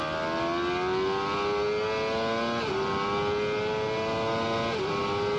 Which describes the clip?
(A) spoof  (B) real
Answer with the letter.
B